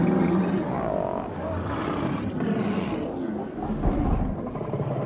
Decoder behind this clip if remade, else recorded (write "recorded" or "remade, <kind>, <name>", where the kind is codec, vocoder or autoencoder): recorded